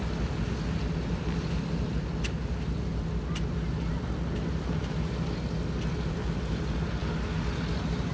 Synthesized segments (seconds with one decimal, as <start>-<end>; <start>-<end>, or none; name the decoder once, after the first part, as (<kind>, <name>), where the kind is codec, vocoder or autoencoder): none